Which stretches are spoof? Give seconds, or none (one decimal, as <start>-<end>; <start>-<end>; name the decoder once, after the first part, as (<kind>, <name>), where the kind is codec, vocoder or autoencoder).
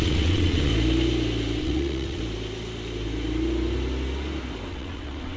0.0-0.7 (vocoder, WaveNeXt); 1.6-2.2; 4.7-5.4